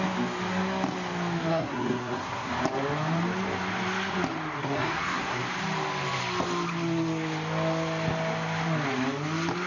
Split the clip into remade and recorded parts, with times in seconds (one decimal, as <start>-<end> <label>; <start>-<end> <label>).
0.0-1.5 recorded; 1.5-2.5 remade; 2.5-4.6 recorded; 4.6-5.4 remade; 5.4-9.7 recorded